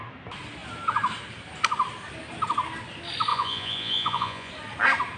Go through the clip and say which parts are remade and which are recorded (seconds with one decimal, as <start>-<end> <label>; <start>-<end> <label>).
0.0-3.3 recorded; 3.3-4.5 remade; 4.5-5.2 recorded